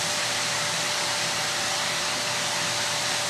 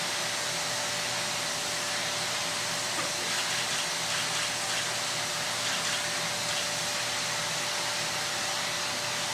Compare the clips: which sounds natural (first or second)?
second